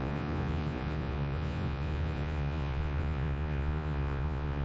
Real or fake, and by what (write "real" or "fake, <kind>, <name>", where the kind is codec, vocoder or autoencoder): fake, vocoder, Vocos